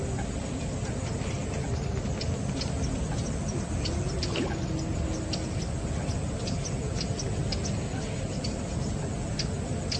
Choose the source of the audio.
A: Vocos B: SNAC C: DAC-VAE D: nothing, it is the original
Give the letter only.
D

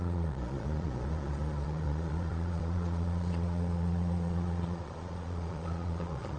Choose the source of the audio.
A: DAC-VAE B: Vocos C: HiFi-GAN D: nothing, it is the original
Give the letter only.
B